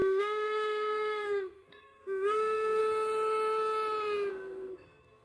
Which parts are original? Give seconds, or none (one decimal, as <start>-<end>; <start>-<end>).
2.8-4.3